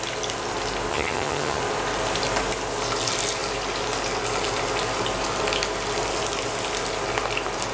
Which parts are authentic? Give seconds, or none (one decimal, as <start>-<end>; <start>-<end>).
0.0-0.9; 1.6-7.7